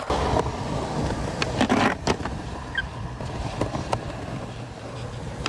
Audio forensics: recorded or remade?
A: remade